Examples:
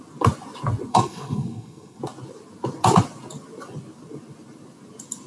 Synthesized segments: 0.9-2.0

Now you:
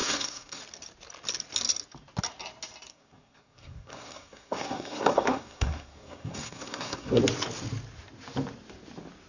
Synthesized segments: 0.0-0.6; 2.9-7.2

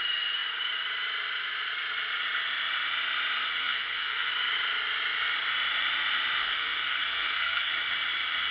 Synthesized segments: 3.6-4.3; 6.4-7.7

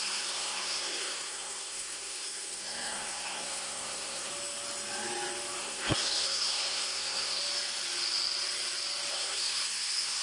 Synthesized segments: 0.0-4.3; 5.6-7.4; 9.1-10.2